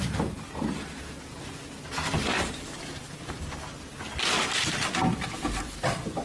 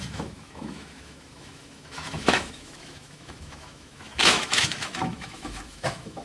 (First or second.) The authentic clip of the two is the first